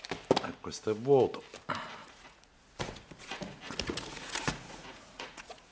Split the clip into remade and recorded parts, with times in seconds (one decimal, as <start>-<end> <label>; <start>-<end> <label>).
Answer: 0.0-2.0 recorded; 2.0-5.7 remade